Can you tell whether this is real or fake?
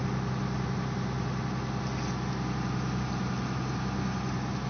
real